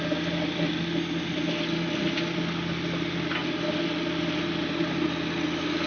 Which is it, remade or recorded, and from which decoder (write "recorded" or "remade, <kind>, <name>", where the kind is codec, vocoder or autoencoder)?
recorded